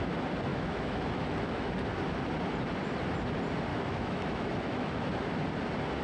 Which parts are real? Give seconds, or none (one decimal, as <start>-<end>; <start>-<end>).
0.0-0.5; 1.7-3.7; 5.1-6.0